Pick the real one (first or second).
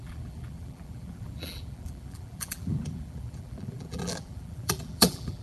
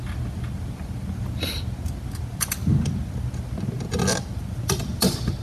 second